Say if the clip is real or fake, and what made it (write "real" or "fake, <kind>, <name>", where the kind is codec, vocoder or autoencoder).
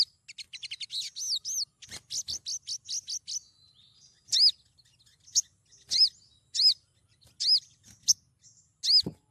real